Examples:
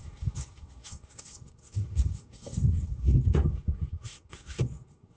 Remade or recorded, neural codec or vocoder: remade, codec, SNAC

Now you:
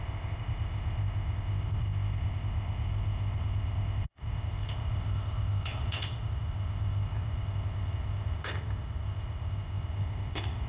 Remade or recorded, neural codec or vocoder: remade, codec, ZipCodec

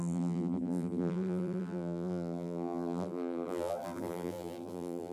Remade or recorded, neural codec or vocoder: remade, vocoder, BigVGAN v2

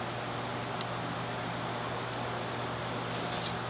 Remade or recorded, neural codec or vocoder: recorded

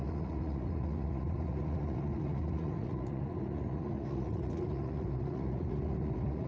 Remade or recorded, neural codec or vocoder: remade, vocoder, Vocos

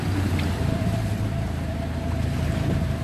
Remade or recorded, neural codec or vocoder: remade, vocoder, BigVGAN v2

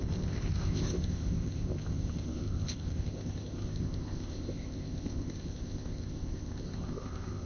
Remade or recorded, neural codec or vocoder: remade, codec, ZipCodec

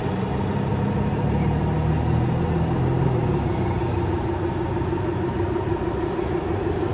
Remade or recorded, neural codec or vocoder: recorded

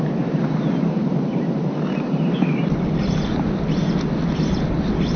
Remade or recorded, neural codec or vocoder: recorded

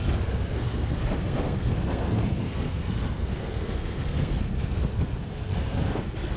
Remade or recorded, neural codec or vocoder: remade, codec, SNAC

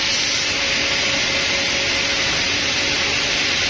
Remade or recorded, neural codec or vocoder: recorded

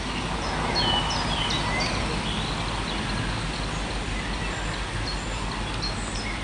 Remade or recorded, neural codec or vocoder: recorded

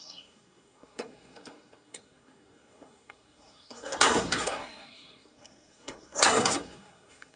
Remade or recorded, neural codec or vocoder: remade, codec, SNAC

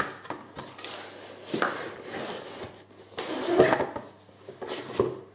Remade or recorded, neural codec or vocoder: recorded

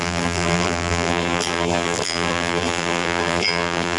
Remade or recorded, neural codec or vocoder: remade, vocoder, BigVGAN v2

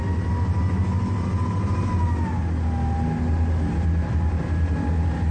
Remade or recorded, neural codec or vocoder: recorded